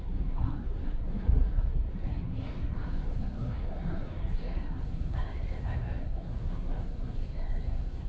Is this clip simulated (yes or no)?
yes